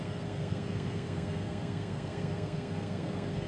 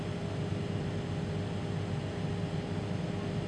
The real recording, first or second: second